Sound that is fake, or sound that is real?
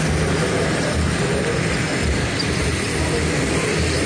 real